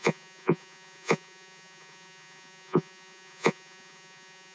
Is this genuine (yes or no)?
no